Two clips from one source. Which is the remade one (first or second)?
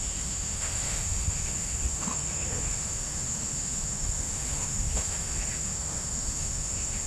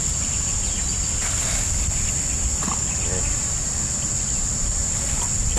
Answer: first